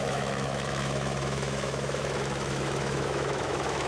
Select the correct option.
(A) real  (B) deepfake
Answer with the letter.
B